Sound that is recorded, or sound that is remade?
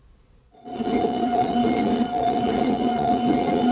remade